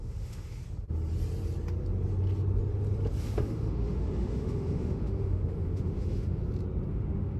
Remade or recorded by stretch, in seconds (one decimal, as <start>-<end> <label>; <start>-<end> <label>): 0.0-0.6 remade; 0.6-3.2 recorded; 3.2-6.4 remade; 6.4-6.9 recorded; 6.9-7.4 remade